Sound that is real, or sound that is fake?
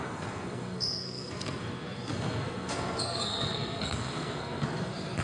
fake